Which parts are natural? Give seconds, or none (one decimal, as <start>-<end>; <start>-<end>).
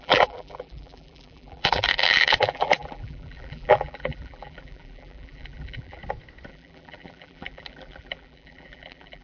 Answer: 6.0-6.5